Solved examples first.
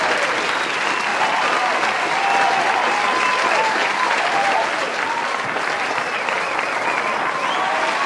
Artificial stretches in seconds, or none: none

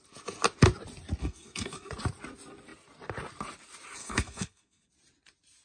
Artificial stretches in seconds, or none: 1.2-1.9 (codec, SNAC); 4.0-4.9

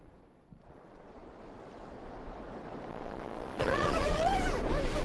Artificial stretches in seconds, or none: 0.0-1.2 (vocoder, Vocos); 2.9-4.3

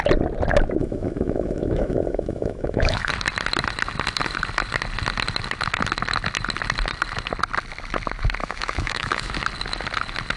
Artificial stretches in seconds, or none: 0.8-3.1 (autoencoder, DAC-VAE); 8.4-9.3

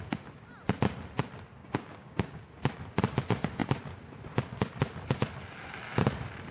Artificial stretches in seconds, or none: 1.6-2.4 (codec, DAC)

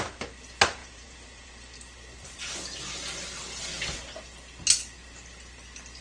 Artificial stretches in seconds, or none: 0.8-1.5 (vocoder, Vocos)